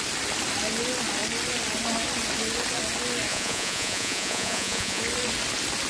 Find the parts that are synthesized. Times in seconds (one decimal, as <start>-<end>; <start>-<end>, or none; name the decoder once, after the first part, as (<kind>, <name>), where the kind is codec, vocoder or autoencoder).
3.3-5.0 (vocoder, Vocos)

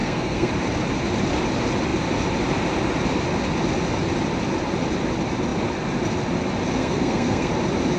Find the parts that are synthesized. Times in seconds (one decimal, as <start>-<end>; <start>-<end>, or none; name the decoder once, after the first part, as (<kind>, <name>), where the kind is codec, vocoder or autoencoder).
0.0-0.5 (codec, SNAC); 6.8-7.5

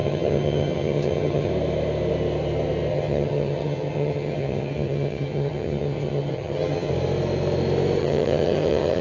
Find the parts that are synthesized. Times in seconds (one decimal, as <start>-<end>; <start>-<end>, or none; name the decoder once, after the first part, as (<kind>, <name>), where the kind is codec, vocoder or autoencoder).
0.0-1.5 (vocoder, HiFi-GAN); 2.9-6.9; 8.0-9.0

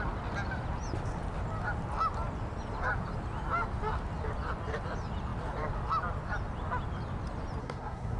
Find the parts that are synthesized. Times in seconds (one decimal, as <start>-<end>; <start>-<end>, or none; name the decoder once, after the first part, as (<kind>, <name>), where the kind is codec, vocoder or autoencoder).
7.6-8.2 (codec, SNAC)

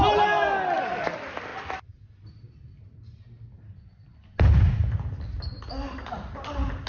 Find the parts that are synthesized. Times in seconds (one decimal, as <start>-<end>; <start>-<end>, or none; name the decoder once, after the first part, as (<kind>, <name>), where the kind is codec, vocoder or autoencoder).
none